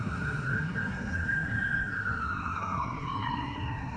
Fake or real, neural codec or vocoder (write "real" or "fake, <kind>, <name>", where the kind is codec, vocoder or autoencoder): fake, codec, SNAC